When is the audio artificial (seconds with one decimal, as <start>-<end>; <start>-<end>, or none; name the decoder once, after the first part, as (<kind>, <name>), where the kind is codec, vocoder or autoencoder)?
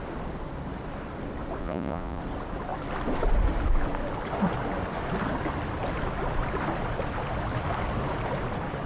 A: 1.6-2.2 (vocoder, Vocos)